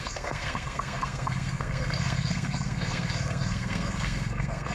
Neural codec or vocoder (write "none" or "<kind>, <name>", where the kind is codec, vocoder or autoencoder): codec, SNAC